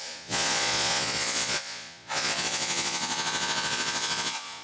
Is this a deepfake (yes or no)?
yes